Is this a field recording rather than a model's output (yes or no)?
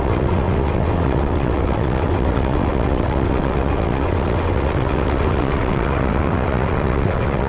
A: no